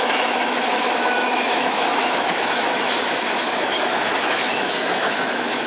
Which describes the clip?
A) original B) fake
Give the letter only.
B